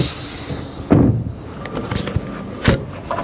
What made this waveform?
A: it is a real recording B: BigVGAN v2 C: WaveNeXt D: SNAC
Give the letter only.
A